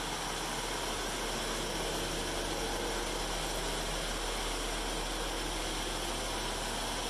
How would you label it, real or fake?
real